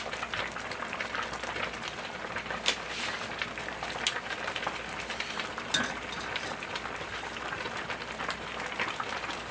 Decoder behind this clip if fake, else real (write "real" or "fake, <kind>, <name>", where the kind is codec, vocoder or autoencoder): real